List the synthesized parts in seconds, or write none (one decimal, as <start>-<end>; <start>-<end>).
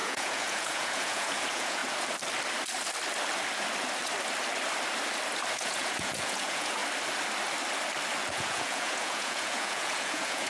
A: 0.0-1.8; 5.5-6.8; 8.3-10.5